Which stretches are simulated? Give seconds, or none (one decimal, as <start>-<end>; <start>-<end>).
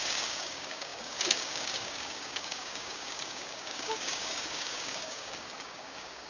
0.0-6.3